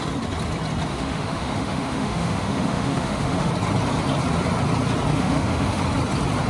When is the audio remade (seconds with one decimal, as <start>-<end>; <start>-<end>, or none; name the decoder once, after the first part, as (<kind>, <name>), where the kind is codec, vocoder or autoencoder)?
0.9-3.5 (autoencoder, DAC-VAE); 5.2-5.8